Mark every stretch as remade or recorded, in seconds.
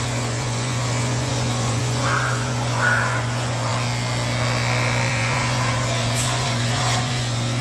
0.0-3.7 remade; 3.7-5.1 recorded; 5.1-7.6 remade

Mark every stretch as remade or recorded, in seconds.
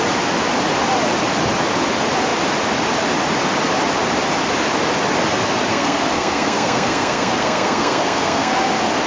0.0-5.7 recorded; 5.7-8.5 remade; 8.5-9.1 recorded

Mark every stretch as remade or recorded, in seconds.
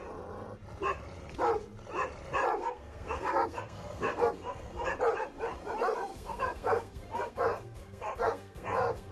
0.0-2.6 recorded; 2.6-4.9 remade; 4.9-6.1 recorded; 6.1-9.1 remade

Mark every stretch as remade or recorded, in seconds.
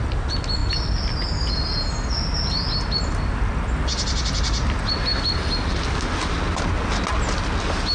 0.0-7.9 recorded